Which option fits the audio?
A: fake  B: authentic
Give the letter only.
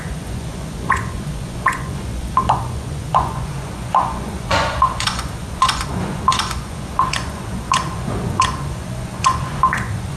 A